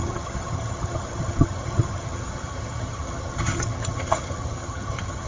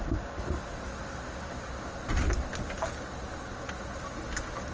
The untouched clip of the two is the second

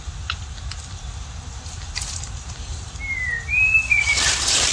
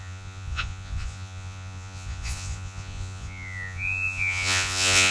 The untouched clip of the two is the first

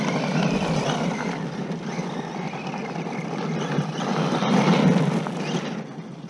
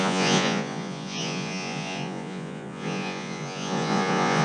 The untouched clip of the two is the first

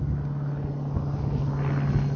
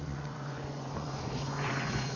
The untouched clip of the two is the first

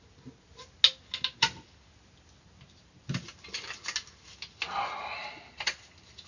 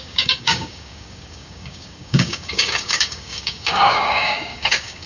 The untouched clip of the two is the first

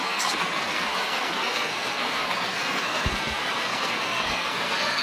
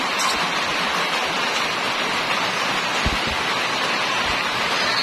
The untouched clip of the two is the second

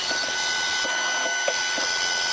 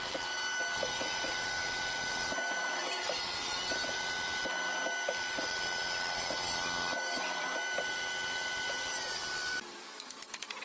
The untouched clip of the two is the first